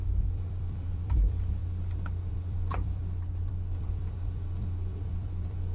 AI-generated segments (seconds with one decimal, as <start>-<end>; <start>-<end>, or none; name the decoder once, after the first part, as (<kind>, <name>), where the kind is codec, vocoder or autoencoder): 0.0-1.6 (vocoder, BigVGAN v2); 2.3-3.0; 3.5-5.7